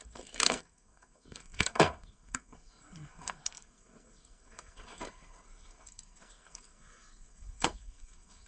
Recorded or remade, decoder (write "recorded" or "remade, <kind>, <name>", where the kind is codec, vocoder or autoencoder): remade, codec, SNAC